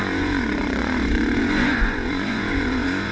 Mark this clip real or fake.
fake